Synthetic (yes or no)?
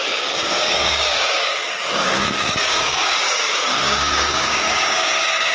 yes